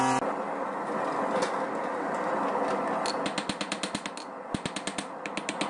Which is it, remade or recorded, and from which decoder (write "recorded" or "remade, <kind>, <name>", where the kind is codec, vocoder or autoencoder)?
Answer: recorded